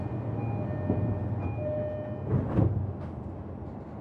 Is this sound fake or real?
real